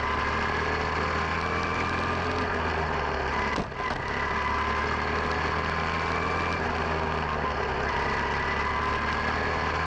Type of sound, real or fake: real